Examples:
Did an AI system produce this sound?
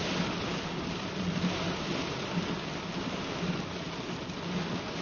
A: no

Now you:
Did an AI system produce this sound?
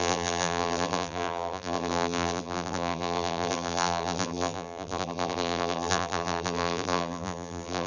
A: yes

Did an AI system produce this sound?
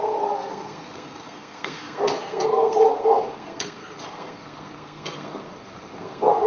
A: yes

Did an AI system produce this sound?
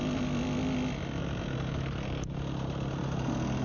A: no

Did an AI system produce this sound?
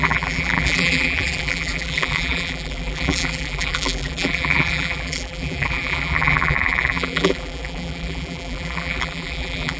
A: yes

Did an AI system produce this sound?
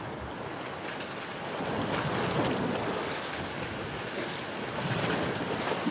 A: no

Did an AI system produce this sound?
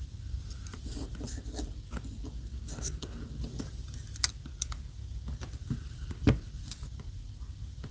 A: no